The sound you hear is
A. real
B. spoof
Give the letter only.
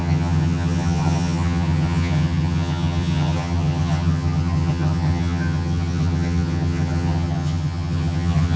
B